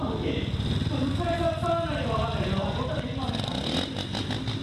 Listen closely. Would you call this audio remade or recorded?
recorded